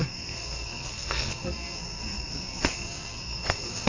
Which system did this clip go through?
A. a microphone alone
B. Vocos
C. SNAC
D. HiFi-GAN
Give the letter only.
C